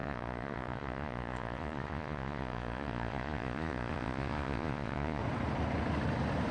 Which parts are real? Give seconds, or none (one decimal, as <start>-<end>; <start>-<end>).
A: 5.2-6.5